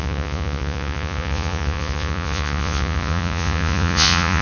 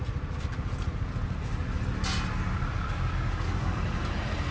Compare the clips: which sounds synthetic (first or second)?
first